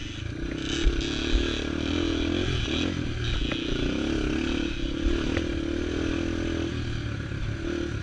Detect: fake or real real